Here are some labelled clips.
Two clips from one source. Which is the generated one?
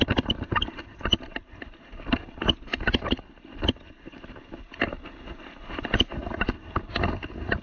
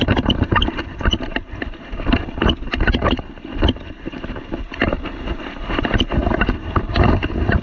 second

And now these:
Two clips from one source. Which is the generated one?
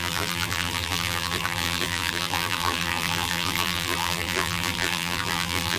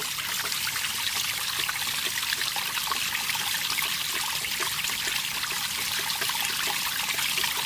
first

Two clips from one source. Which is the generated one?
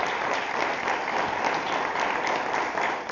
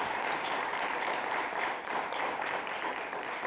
second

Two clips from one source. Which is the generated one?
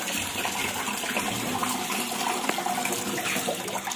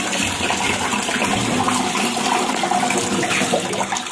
first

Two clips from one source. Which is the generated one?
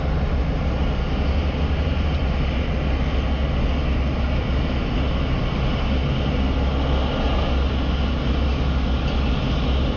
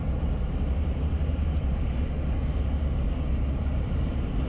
second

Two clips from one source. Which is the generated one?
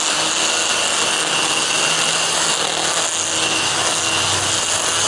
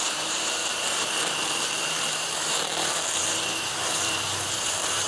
second